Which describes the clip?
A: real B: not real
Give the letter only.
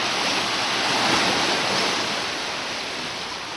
A